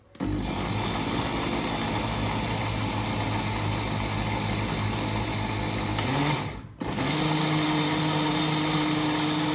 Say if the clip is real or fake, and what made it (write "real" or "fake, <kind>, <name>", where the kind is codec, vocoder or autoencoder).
real